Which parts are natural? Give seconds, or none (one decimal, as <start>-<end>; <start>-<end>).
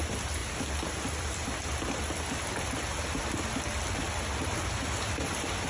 0.0-5.7